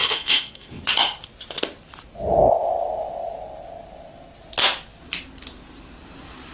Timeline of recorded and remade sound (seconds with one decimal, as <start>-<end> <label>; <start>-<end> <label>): 0.0-0.8 remade; 0.8-6.5 recorded